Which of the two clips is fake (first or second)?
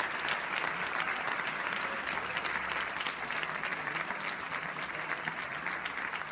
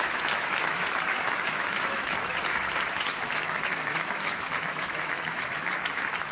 second